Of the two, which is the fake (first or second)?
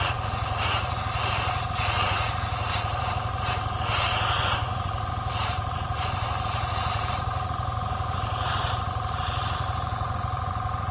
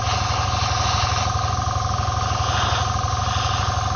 first